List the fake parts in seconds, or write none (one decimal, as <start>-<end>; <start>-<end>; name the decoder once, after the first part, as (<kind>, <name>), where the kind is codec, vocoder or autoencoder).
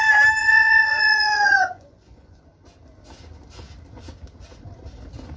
0.4-2.4 (vocoder, Vocos)